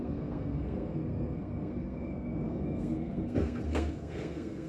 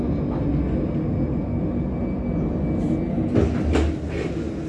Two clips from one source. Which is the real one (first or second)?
second